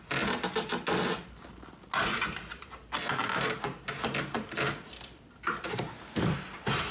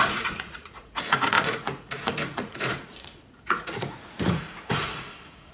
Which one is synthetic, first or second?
second